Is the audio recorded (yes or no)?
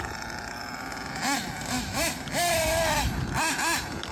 yes